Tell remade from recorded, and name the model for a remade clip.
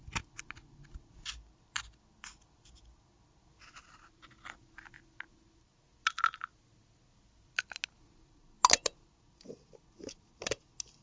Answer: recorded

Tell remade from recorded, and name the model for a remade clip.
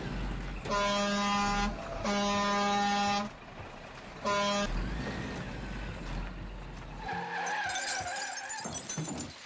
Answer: recorded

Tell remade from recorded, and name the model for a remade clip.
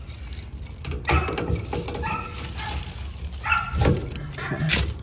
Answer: recorded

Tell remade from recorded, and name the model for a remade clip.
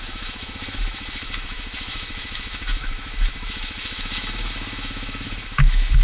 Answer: remade, autoencoder, DAC-VAE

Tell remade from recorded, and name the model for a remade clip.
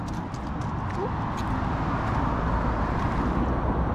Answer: recorded